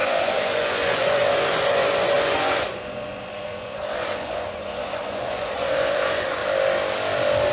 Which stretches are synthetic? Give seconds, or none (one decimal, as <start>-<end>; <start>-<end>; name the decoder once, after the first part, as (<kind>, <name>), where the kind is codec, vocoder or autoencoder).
0.0-6.4 (vocoder, Vocos)